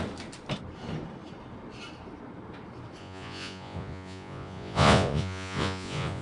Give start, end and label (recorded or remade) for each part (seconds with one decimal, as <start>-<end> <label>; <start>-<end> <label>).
0.0-3.0 recorded; 3.0-6.2 remade